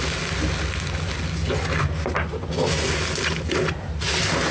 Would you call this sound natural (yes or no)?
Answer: yes